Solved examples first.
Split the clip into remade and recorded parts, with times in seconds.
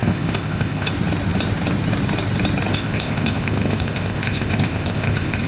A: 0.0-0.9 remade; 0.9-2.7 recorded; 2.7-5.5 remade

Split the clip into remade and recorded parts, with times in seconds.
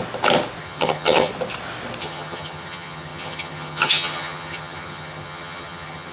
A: 0.0-0.6 recorded; 0.6-1.3 remade; 1.3-2.0 recorded; 2.0-6.1 remade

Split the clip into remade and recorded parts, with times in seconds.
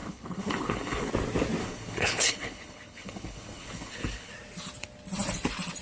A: 0.0-1.1 remade; 1.1-1.6 recorded; 1.6-4.3 remade; 4.3-5.8 recorded